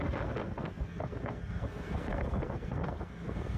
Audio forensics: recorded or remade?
remade